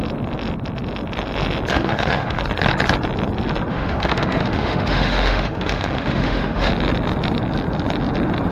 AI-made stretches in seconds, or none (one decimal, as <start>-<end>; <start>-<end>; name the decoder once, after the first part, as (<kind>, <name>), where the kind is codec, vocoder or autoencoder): 1.7-2.4 (autoencoder, DAC-VAE); 3.7-6.7